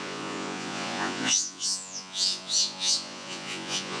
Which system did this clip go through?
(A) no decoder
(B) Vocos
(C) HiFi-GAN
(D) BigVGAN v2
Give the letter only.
B